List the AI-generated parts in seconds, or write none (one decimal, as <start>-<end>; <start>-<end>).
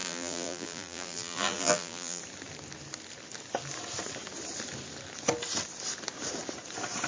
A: 0.0-2.2